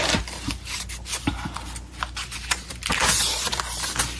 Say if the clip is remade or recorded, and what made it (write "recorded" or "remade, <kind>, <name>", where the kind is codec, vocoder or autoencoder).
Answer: recorded